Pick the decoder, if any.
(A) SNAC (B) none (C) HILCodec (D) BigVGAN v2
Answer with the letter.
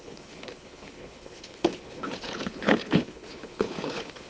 C